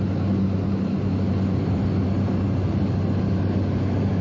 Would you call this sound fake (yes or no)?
no